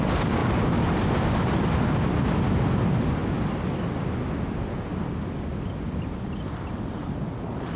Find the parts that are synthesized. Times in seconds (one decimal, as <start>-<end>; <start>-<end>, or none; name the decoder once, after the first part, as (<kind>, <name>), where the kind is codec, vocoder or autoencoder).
none